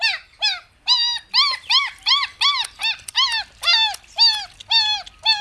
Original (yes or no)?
yes